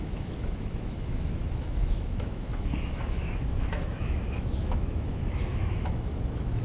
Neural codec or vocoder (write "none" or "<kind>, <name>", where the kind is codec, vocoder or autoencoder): autoencoder, DAC-VAE